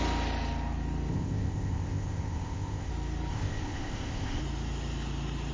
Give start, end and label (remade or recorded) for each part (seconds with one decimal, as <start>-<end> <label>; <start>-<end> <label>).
0.0-1.1 recorded; 1.1-2.9 remade; 2.9-3.3 recorded; 3.3-4.4 remade; 4.4-5.5 recorded